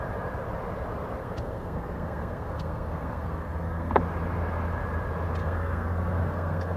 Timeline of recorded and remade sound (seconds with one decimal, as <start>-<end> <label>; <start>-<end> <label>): 0.0-1.2 recorded; 1.2-4.0 remade; 4.0-5.4 recorded; 5.4-6.8 remade